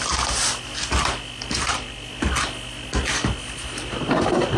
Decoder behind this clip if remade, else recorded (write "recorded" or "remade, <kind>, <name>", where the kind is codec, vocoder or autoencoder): recorded